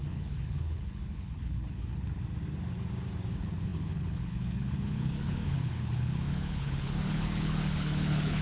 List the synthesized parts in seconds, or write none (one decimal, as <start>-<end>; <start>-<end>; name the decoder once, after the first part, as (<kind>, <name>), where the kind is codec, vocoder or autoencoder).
0.0-1.9 (codec, HILCodec); 3.3-8.4